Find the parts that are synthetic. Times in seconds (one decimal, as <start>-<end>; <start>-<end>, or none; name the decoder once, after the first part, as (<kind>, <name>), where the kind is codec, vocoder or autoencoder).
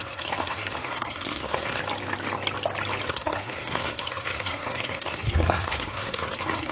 0.0-1.8 (codec, SNAC); 3.1-6.7